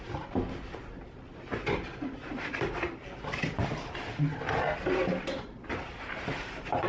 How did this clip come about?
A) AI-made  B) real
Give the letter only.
B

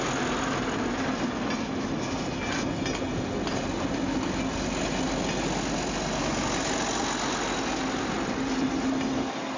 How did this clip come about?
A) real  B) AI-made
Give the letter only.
A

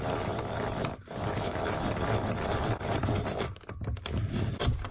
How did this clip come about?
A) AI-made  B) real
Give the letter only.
A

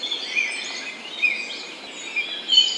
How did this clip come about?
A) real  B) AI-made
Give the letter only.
A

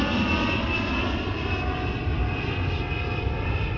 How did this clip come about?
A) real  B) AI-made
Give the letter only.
A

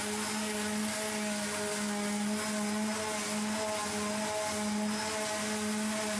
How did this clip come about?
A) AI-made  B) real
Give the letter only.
B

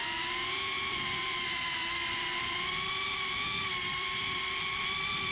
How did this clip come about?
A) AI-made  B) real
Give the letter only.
A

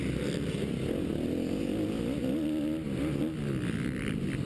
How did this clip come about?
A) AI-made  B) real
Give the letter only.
B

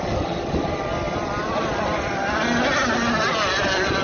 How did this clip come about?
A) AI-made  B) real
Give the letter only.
B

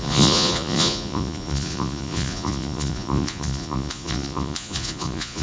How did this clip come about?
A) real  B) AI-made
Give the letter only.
B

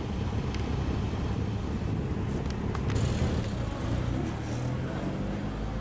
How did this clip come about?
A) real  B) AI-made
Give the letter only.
A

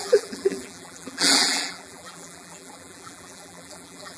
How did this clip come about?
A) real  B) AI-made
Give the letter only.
B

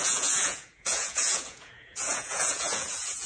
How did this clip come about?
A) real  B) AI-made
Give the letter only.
B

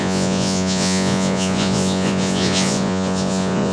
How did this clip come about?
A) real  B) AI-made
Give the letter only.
B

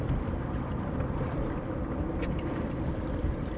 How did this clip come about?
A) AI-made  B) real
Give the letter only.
A